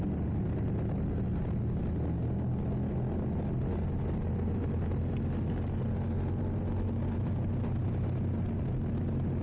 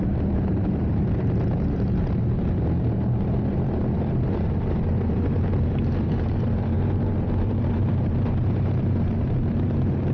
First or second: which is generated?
second